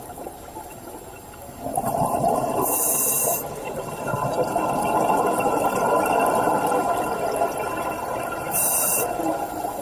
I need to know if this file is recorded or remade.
recorded